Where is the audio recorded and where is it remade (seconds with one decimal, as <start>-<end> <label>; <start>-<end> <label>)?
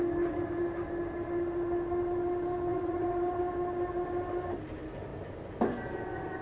0.0-2.7 recorded; 2.7-3.4 remade; 3.4-6.4 recorded